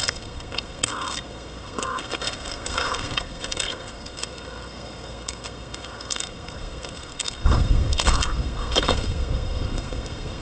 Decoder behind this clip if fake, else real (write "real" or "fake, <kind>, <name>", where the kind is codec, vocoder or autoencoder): fake, codec, SNAC